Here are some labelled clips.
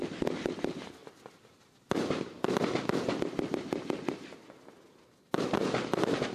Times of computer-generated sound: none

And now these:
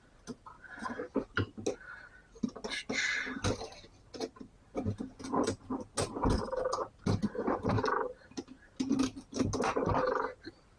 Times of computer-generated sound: none